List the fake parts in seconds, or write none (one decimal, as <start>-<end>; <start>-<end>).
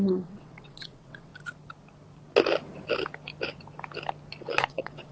0.0-1.3; 4.4-5.1